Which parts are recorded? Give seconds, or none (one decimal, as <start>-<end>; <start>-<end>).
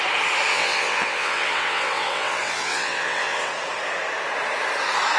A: 0.0-0.5; 3.5-5.2